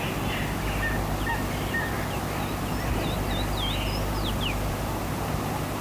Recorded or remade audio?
recorded